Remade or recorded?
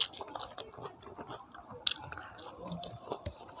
recorded